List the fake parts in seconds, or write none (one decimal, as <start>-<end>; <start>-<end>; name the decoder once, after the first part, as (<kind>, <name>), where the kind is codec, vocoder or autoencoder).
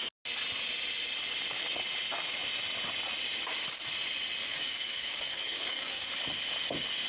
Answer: 4.5-6.1 (codec, DAC)